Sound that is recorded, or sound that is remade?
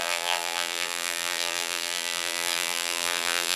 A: remade